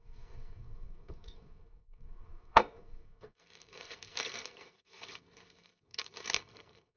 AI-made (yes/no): yes